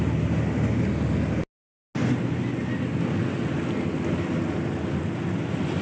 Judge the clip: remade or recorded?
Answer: recorded